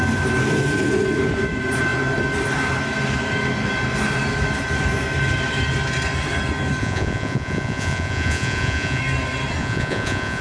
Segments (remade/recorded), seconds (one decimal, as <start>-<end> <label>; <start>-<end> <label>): 0.0-6.8 recorded; 6.8-9.0 remade; 9.0-9.6 recorded; 9.6-10.4 remade